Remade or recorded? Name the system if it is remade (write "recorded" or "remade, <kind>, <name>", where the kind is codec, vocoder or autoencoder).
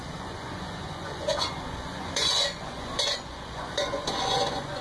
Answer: remade, vocoder, Vocos